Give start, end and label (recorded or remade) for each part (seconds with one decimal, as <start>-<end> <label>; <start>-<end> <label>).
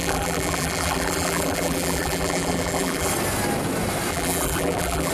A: 0.0-3.1 remade; 3.1-4.1 recorded; 4.1-5.1 remade